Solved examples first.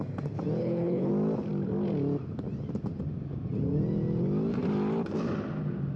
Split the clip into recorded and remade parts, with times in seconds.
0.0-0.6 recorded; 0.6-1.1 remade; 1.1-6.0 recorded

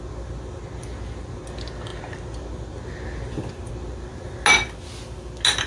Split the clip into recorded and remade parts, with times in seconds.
0.0-5.7 recorded

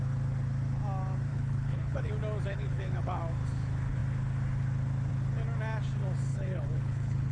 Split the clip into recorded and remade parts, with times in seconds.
0.0-1.3 recorded; 1.3-2.1 remade; 2.1-2.5 recorded; 2.5-3.2 remade; 3.2-6.3 recorded; 6.3-7.3 remade

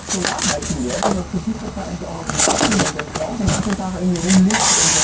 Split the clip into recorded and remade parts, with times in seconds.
0.0-1.2 recorded; 1.2-3.6 remade; 3.6-5.0 recorded

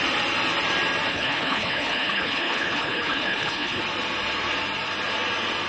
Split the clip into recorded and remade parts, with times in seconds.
0.0-1.1 recorded; 1.1-3.8 remade; 3.8-5.7 recorded